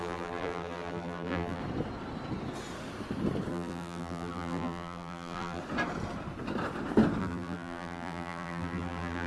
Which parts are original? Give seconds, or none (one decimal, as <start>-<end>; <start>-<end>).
1.6-3.5; 5.6-7.2